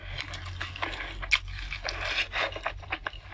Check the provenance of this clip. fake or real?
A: real